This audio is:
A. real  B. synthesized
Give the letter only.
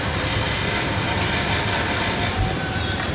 B